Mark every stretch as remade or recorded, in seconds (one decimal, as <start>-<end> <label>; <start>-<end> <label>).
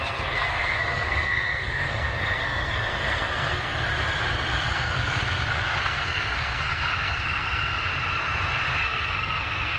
0.0-3.9 remade; 3.9-4.6 recorded; 4.6-7.9 remade; 7.9-8.8 recorded; 8.8-9.8 remade